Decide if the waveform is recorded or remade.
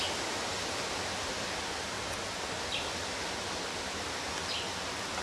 recorded